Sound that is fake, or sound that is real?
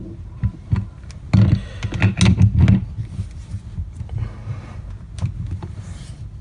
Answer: real